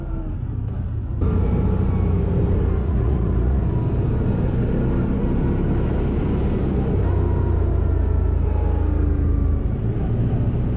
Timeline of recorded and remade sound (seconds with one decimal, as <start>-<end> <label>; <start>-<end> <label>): 0.0-2.8 recorded; 2.8-3.6 remade; 3.6-10.8 recorded